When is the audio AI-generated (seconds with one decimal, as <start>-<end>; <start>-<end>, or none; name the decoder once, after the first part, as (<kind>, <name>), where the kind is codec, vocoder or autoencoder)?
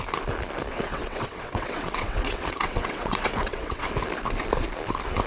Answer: 0.7-3.9 (vocoder, WaveNeXt)